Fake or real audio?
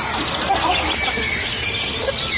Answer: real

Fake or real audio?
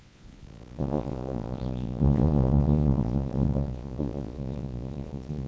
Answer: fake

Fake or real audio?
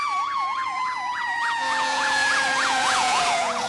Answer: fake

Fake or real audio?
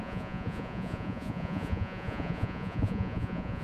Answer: fake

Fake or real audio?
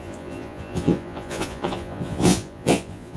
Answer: fake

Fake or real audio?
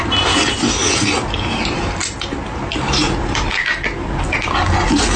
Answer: real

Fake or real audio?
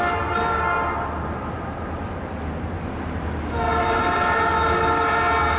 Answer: real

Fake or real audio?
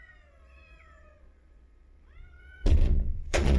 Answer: fake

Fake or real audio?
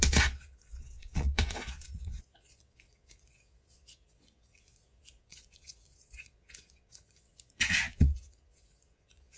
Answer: fake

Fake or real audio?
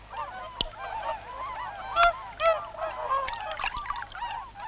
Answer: real